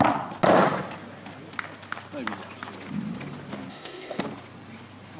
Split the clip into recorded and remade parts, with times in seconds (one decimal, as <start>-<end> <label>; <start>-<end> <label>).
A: 0.0-3.7 recorded; 3.7-4.2 remade; 4.2-5.2 recorded